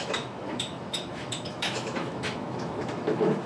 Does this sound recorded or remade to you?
remade